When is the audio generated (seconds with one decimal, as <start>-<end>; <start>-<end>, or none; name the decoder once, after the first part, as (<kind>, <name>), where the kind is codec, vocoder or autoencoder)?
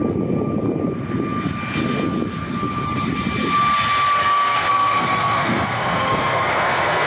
4.2-7.1 (codec, SNAC)